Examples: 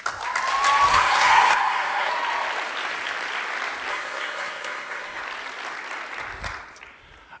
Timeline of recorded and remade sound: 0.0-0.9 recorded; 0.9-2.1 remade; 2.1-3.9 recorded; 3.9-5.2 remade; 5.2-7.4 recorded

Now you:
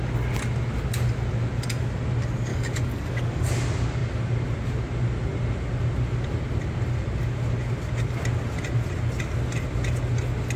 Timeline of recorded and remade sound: 0.0-2.5 recorded; 2.5-3.5 remade; 3.5-10.6 recorded

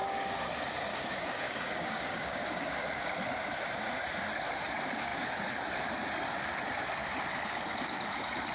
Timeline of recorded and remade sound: 0.0-0.5 remade; 0.5-0.9 recorded; 0.9-2.7 remade; 2.7-8.5 recorded

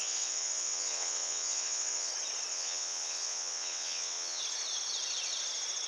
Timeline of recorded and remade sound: 0.0-2.1 remade; 2.1-2.5 recorded; 2.5-4.4 remade; 4.4-5.9 recorded

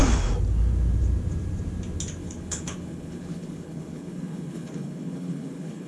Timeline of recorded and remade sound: 0.0-2.2 recorded; 2.2-5.9 remade

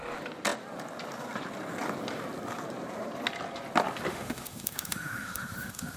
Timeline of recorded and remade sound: 0.0-4.1 recorded; 4.1-6.0 remade